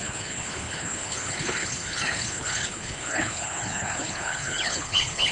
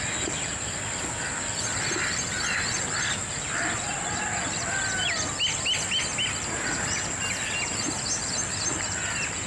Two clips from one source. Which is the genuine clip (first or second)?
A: second